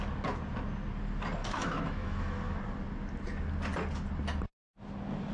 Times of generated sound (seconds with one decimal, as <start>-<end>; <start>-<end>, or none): 1.4-2.6